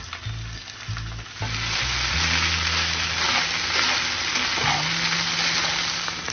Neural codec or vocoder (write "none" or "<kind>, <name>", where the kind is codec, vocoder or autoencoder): none